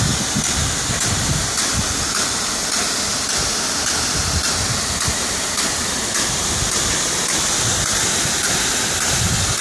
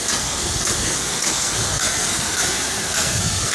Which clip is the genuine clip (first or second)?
first